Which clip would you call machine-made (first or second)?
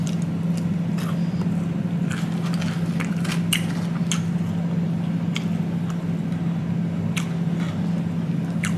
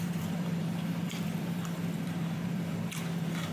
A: second